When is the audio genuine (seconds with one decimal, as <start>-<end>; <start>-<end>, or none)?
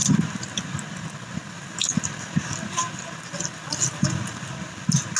0.0-5.2